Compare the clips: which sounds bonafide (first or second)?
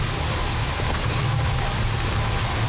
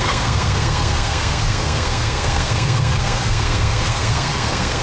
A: first